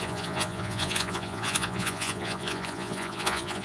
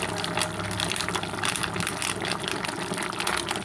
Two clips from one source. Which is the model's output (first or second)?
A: first